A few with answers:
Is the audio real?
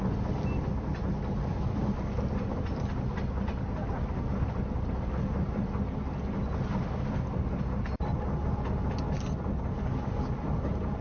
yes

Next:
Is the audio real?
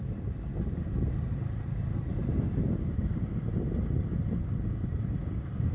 yes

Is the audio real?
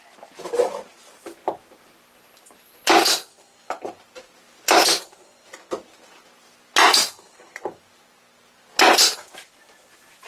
yes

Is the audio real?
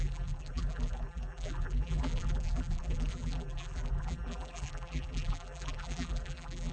no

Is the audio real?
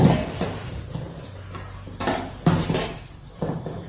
yes